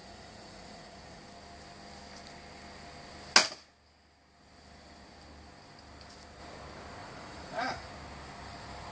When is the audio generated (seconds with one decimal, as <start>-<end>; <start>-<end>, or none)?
0.0-1.2; 7.0-7.9